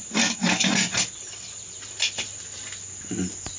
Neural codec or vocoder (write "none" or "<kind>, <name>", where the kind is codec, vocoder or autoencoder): none